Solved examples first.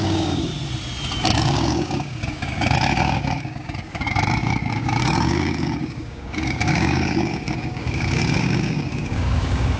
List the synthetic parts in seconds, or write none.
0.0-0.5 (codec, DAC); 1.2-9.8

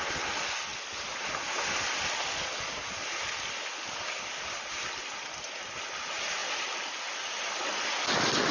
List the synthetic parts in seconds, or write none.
none

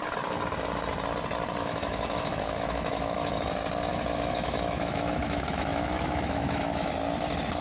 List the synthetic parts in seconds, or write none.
1.6-3.3 (autoencoder, DAC-VAE); 3.9-6.9

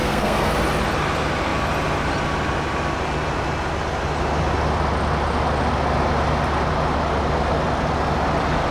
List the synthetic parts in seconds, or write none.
0.0-0.5 (codec, SNAC)

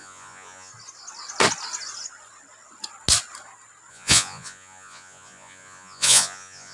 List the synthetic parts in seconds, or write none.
0.0-0.7 (vocoder, Vocos); 3.9-6.7

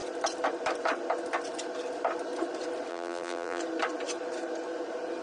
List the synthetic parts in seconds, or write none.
2.9-3.6 (vocoder, BigVGAN v2)

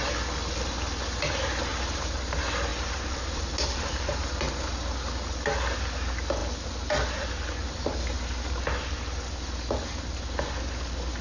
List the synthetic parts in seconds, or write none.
1.7-2.2 (vocoder, BigVGAN v2); 2.7-4.3

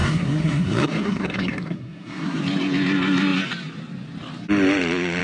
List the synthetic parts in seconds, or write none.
0.0-2.4 (codec, SNAC)